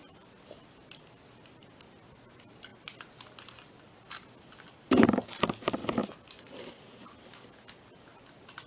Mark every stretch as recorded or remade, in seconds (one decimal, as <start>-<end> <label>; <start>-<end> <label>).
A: 0.0-8.7 recorded